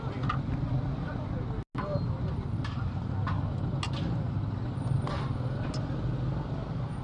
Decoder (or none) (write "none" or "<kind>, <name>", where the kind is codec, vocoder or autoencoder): none